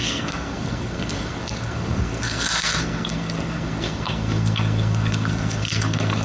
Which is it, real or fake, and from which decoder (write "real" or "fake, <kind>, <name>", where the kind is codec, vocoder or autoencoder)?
fake, codec, SNAC